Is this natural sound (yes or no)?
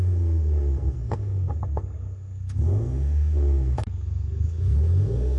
no